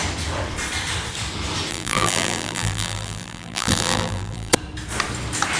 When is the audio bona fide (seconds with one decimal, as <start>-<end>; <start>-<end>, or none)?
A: 0.0-1.7; 4.5-5.6